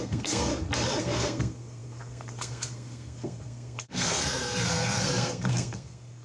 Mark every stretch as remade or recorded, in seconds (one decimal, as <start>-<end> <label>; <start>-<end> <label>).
0.0-0.5 remade; 0.5-1.0 recorded; 1.0-6.2 remade